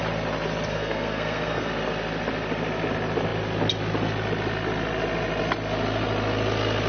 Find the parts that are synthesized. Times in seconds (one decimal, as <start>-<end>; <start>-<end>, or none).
0.7-1.7